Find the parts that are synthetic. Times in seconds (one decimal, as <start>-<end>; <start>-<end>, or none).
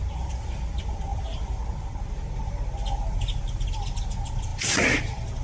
none